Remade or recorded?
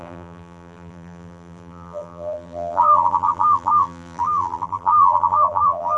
remade